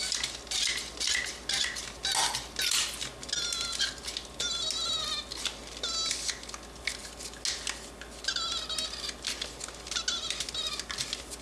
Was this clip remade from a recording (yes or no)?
no